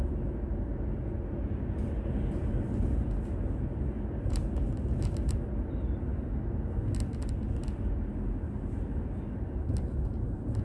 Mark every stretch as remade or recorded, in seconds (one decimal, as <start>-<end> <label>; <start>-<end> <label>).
0.0-10.6 recorded